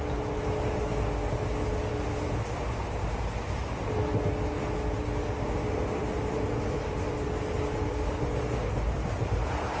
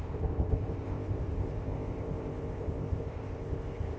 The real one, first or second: first